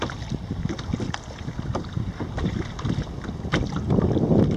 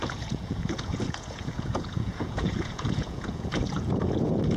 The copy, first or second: second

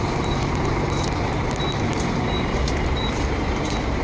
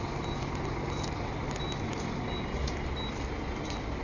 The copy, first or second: first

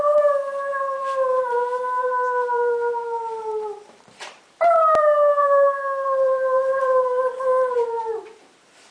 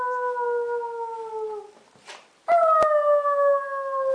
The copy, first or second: first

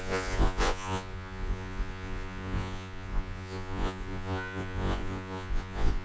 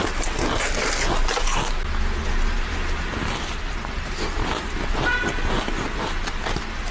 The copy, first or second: first